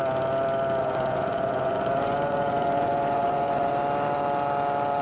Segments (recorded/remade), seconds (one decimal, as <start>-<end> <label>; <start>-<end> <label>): 0.0-0.8 recorded; 0.8-3.7 remade; 3.7-5.0 recorded